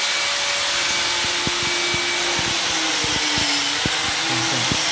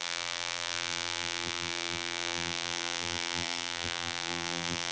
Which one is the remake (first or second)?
second